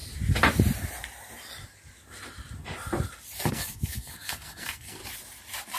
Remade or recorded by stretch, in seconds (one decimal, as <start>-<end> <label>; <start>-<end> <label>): 0.0-3.5 recorded; 3.5-5.0 remade; 5.0-5.8 recorded